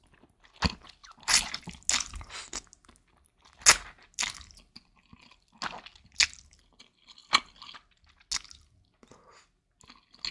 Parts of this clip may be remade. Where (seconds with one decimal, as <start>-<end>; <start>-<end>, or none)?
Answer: 1.0-1.6